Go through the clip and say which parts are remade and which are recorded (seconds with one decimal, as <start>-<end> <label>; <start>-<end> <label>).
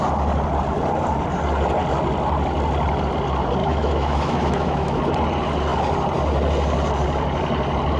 0.0-3.6 recorded; 3.6-5.0 remade; 5.0-8.0 recorded